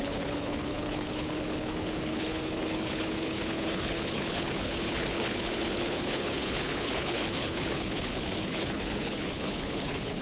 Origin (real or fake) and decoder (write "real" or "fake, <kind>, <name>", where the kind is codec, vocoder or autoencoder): fake, codec, HILCodec